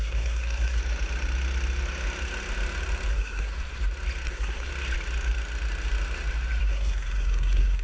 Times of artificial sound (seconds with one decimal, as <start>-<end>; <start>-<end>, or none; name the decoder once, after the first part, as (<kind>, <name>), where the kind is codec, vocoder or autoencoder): 0.0-0.8 (codec, SNAC); 3.1-3.5; 4.3-4.7; 6.6-7.8

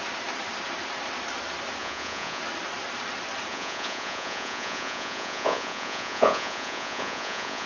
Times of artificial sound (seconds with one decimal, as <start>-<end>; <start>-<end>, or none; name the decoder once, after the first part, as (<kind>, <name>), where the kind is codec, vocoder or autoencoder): 1.8-2.4 (vocoder, Vocos); 3.5-7.7

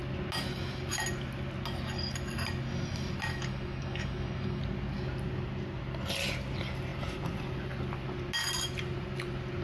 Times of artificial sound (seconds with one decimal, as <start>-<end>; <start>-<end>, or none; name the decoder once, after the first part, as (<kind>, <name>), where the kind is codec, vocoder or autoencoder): 3.3-4.6 (codec, DAC)

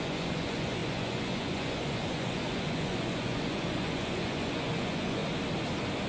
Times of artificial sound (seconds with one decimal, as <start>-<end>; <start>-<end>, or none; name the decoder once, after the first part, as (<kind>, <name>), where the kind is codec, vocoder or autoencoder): 0.0-5.2 (vocoder, Vocos)